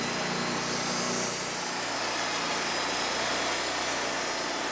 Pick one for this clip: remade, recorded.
recorded